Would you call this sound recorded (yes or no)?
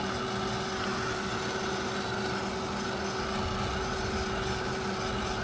yes